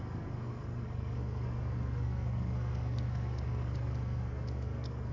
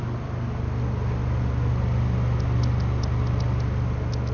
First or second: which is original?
second